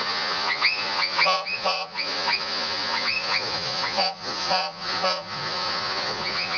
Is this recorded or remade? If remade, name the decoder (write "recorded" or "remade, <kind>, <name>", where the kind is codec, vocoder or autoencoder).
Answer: remade, vocoder, Vocos